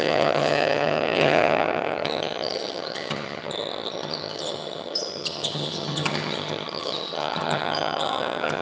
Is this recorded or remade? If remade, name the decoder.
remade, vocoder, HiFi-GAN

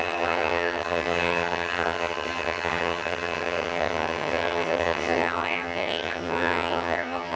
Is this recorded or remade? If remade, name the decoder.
remade, vocoder, HiFi-GAN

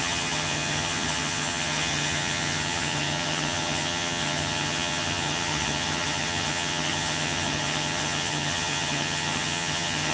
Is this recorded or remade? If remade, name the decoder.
remade, vocoder, HiFi-GAN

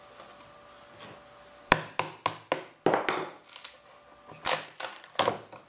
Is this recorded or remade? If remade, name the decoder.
recorded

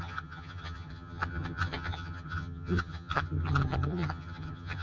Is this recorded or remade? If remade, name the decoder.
remade, vocoder, HiFi-GAN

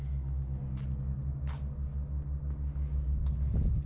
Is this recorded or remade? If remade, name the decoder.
recorded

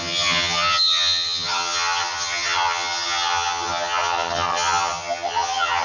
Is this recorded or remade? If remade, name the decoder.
remade, vocoder, HiFi-GAN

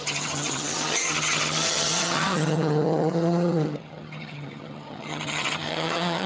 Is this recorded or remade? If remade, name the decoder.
remade, vocoder, HiFi-GAN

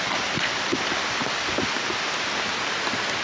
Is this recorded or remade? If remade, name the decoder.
recorded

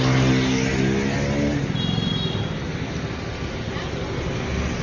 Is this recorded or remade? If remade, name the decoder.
recorded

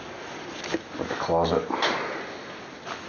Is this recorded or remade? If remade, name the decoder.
recorded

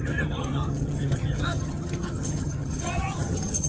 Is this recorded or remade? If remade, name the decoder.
remade, vocoder, HiFi-GAN